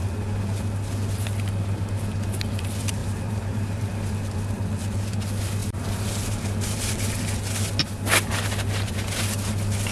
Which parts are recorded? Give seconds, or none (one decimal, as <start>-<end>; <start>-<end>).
0.0-3.0; 4.1-5.6; 7.2-9.9